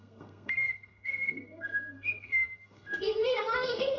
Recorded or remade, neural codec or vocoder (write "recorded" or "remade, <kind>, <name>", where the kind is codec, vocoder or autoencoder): remade, codec, SNAC